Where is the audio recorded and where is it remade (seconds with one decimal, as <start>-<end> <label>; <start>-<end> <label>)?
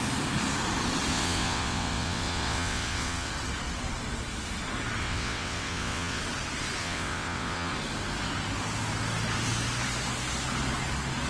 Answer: 0.0-1.1 recorded; 1.1-3.3 remade; 3.3-5.0 recorded; 5.0-6.2 remade; 6.2-6.8 recorded; 6.8-7.7 remade; 7.7-11.3 recorded